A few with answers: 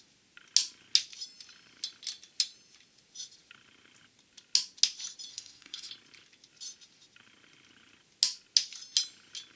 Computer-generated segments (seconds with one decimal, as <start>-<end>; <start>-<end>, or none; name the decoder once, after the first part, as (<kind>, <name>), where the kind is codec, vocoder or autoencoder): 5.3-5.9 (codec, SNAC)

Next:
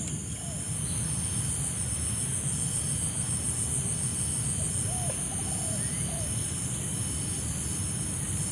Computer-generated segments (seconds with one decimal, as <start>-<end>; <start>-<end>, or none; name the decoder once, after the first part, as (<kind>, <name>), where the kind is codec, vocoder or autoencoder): none

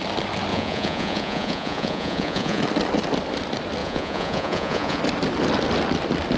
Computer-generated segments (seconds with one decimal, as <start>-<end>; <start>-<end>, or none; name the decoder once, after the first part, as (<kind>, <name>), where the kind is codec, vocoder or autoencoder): 0.5-2.6 (vocoder, Vocos); 3.8-5.0

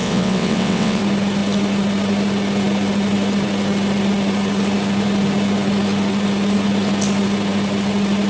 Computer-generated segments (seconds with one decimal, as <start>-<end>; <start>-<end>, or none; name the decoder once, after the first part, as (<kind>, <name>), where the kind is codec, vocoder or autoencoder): 0.0-1.0 (vocoder, WaveNeXt)

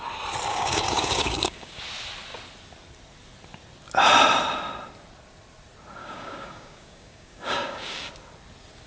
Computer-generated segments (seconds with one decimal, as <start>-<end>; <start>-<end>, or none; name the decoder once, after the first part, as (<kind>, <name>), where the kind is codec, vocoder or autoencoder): 0.5-1.8 (codec, DAC); 6.0-8.1

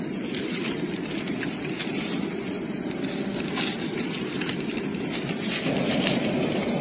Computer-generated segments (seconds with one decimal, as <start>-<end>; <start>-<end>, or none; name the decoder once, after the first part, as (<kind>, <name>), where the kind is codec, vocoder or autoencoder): none